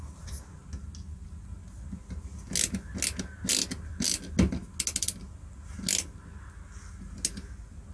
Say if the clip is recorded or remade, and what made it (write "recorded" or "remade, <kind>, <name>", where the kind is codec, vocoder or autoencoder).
recorded